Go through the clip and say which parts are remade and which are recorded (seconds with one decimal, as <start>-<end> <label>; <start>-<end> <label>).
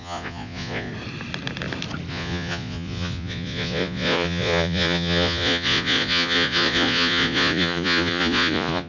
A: 0.0-0.9 remade; 0.9-2.1 recorded; 2.1-8.9 remade